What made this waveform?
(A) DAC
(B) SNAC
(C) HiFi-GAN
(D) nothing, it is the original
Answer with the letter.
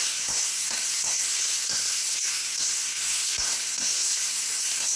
B